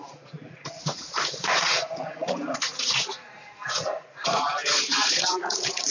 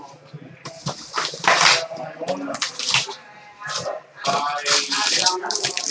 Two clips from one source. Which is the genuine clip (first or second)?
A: second